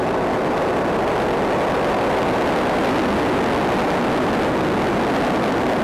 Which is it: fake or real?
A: real